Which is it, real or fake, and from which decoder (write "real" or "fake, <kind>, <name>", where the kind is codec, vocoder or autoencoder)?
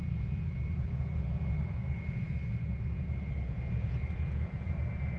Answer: fake, vocoder, Vocos